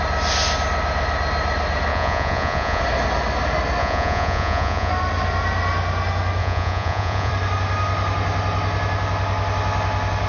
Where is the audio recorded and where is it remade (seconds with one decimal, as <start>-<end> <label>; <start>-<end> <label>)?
0.0-1.9 recorded; 1.9-2.8 remade; 2.8-3.8 recorded; 3.8-4.9 remade; 4.9-6.4 recorded; 6.4-7.3 remade; 7.3-10.3 recorded